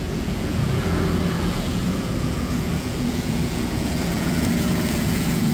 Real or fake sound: fake